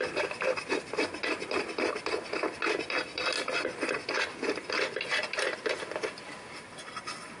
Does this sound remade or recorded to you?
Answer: recorded